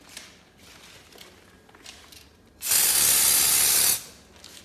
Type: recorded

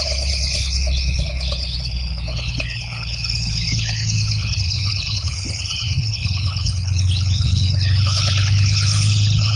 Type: remade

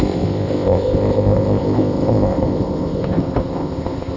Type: remade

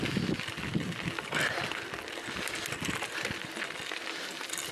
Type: recorded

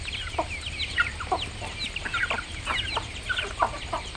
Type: recorded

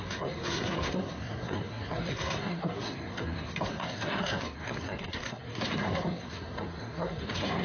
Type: remade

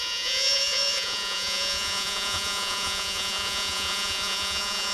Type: remade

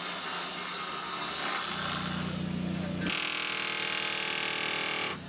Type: recorded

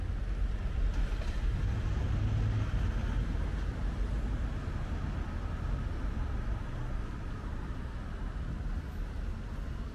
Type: recorded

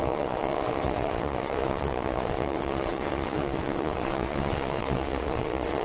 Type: remade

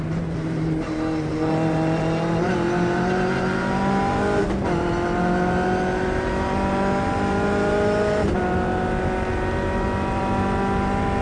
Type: remade